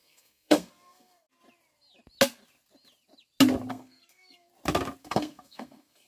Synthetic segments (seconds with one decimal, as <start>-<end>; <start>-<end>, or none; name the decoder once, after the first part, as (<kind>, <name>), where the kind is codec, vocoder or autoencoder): 0.0-1.3 (codec, SNAC); 3.7-4.5; 5.0-6.1